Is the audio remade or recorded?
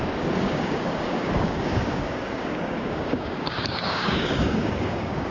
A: remade